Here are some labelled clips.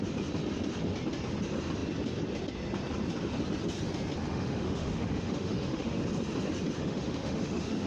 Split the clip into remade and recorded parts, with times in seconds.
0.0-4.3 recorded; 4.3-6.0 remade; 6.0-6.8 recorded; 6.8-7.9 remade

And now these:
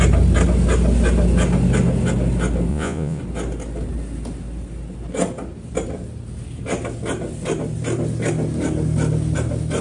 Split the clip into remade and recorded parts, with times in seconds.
0.0-2.7 recorded; 2.7-3.2 remade; 3.2-9.8 recorded

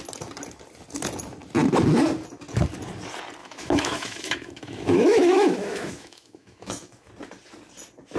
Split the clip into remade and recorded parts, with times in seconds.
0.0-3.4 recorded; 3.4-7.1 remade; 7.1-8.2 recorded

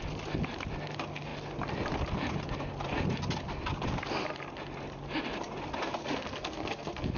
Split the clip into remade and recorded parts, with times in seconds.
0.0-6.0 recorded; 6.0-7.2 remade

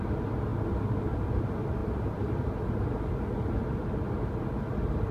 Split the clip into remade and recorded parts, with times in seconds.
0.0-1.8 recorded; 1.8-3.0 remade; 3.0-5.1 recorded

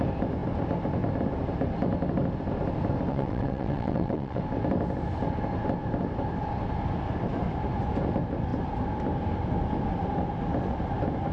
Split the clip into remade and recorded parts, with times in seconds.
0.0-3.1 recorded; 3.1-4.4 remade; 4.4-11.3 recorded

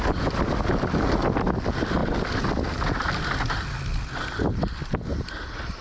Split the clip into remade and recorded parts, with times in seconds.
0.0-5.8 recorded